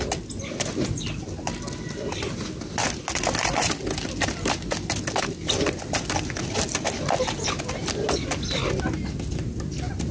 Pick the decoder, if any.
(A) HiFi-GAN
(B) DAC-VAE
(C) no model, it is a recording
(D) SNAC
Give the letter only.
C